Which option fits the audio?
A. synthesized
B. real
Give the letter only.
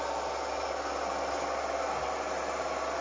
B